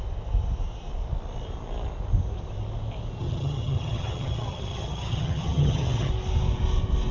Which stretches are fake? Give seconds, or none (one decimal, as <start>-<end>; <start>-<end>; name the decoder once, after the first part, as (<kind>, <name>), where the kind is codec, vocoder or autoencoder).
3.2-6.1 (vocoder, HiFi-GAN)